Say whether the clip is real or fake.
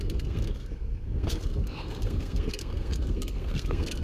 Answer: fake